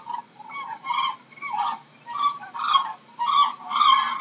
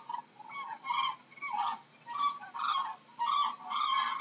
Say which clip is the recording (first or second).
second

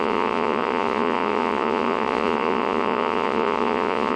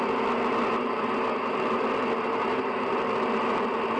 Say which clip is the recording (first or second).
second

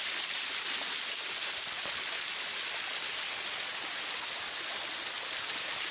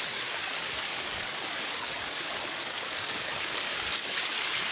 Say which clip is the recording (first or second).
first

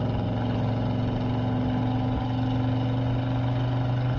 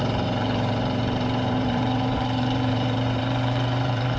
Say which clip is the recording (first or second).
first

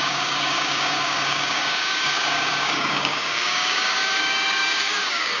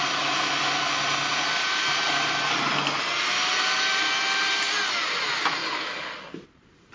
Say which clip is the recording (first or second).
second